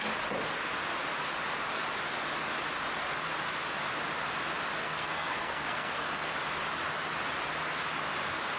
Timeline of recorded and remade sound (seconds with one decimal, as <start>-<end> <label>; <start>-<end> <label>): 0.0-4.8 recorded; 4.8-6.3 remade; 6.3-8.6 recorded